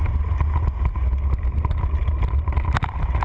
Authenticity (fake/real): real